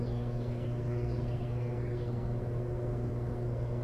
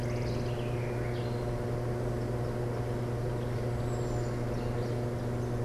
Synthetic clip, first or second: first